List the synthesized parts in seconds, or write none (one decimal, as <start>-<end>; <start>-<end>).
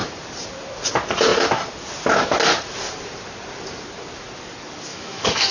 4.9-5.5